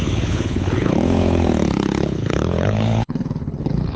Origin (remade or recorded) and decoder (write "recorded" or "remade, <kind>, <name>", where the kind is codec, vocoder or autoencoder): remade, codec, HILCodec